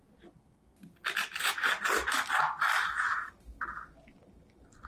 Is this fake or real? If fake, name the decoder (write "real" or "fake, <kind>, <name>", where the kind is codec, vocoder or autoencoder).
real